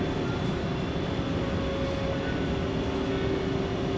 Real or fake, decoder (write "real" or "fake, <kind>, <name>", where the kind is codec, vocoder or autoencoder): real